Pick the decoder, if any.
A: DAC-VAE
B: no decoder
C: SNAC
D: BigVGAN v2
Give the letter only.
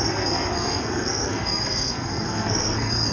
C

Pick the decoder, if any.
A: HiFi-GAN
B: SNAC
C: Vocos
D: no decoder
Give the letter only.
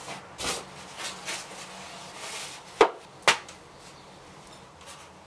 D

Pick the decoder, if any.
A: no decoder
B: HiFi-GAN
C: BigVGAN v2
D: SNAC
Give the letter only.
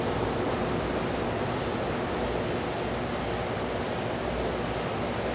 A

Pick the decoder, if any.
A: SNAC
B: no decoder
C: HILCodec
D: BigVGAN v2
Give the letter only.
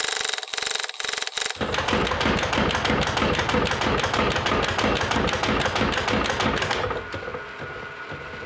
B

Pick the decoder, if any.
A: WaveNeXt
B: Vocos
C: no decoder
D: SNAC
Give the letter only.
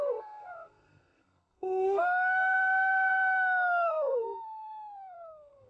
D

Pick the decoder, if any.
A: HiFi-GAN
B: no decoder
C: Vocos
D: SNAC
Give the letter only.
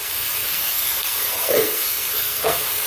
D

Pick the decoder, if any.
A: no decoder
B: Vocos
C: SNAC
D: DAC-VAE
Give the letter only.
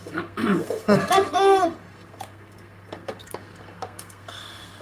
C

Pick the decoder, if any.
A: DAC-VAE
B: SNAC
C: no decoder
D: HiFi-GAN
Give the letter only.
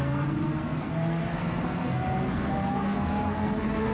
B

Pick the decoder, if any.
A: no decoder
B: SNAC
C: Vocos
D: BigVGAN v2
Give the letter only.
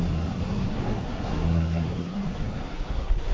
B